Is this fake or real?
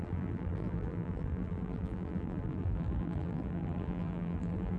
fake